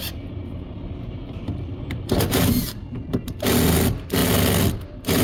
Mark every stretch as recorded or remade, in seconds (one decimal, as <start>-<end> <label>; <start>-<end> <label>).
0.0-0.4 recorded; 0.4-3.5 remade; 3.5-5.2 recorded

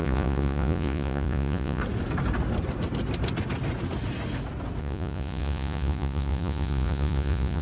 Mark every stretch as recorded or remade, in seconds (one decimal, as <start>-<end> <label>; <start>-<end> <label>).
0.0-1.8 remade; 1.8-4.8 recorded; 4.8-7.6 remade

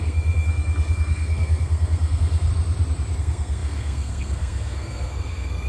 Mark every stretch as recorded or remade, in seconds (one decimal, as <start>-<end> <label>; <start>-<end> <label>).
0.0-2.5 remade; 2.5-3.2 recorded; 3.2-5.7 remade

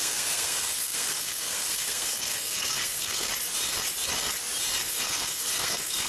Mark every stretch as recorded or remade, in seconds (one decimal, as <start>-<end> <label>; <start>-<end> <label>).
0.0-3.3 remade; 3.3-4.9 recorded; 4.9-6.1 remade

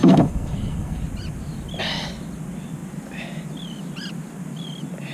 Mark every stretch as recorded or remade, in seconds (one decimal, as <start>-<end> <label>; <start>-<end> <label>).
0.0-1.0 remade; 1.0-5.1 recorded